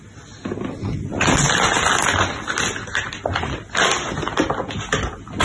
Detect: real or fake real